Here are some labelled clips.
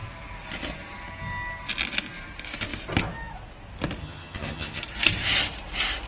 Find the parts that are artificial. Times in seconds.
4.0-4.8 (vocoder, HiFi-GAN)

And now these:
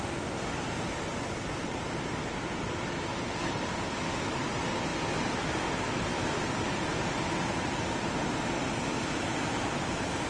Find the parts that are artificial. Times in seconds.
none

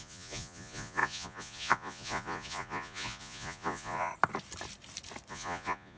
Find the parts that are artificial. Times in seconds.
0.0-4.1 (vocoder, Vocos); 5.3-6.0

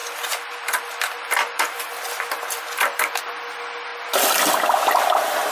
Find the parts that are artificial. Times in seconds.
0.0-3.2 (vocoder, BigVGAN v2)

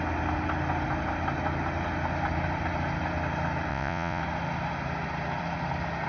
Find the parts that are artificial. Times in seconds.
3.7-4.2 (vocoder, Vocos)

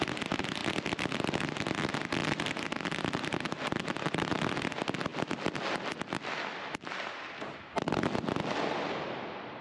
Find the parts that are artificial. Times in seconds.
none

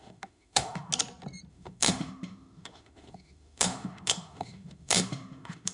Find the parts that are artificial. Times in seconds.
0.0-0.9 (autoencoder, DAC-VAE); 1.5-5.7